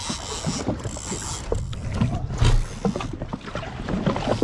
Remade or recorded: recorded